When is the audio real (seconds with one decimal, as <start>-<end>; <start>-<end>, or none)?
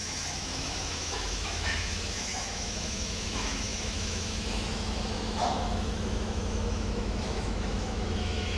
none